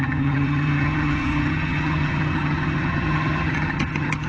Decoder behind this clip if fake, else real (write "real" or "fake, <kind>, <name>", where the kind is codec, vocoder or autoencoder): fake, vocoder, HiFi-GAN